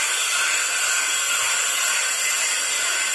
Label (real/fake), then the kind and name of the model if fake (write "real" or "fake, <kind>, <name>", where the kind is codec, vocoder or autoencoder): real